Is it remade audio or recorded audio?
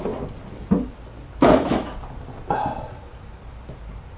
recorded